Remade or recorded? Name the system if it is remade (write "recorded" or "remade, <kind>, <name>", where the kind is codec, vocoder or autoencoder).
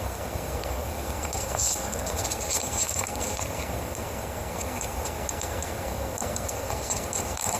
remade, codec, SNAC